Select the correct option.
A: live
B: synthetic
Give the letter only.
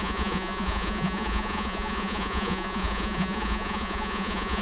B